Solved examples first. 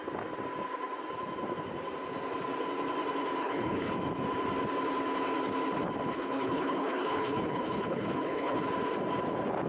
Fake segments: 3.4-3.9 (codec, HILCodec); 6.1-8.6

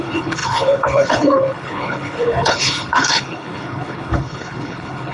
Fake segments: 0.0-5.1 (codec, HILCodec)